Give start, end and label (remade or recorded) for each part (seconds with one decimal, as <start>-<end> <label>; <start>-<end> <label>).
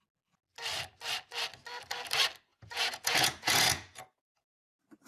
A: 0.0-2.5 recorded; 2.5-4.5 remade; 4.5-5.1 recorded